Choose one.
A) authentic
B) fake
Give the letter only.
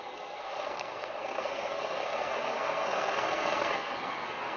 B